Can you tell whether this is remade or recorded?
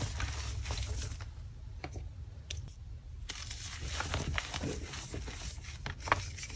recorded